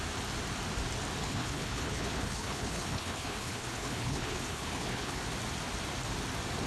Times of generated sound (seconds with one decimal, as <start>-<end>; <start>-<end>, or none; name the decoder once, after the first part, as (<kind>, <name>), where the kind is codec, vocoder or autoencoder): 1.2-5.2 (codec, HILCodec)